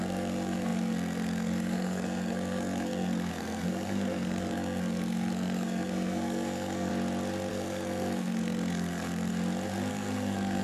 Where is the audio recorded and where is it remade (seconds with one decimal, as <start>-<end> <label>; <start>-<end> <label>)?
0.0-6.9 remade; 6.9-7.5 recorded; 7.5-9.3 remade; 9.3-9.9 recorded; 9.9-10.6 remade